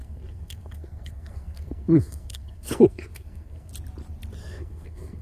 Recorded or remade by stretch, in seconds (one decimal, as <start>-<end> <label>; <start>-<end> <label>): 0.0-3.7 remade; 3.7-4.4 recorded; 4.4-5.2 remade